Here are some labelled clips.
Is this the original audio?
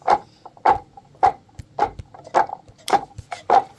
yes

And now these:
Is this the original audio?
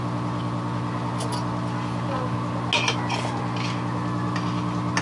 yes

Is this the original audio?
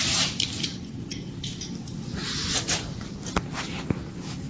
yes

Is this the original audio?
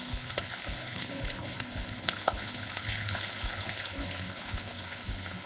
no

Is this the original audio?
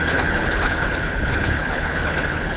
no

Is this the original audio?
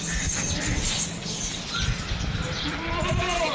yes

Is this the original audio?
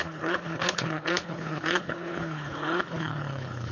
no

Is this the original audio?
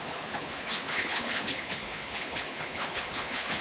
no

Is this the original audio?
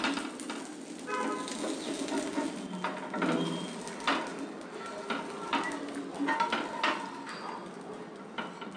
yes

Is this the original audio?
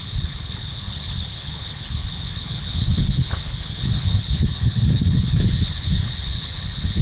no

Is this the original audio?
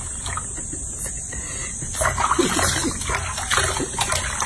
yes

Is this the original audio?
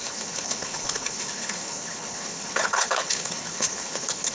no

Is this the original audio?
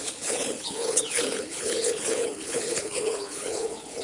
no